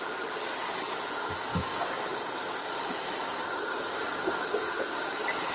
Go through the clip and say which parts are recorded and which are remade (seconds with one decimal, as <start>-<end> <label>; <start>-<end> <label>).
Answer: 0.0-1.5 recorded; 1.5-2.0 remade; 2.0-3.4 recorded; 3.4-5.5 remade